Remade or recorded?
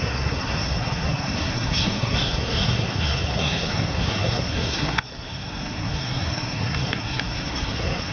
remade